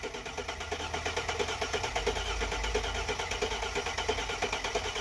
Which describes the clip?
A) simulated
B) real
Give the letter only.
B